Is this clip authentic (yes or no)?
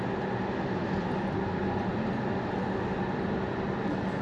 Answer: yes